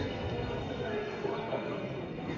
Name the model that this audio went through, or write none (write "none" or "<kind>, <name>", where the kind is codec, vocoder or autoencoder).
codec, SNAC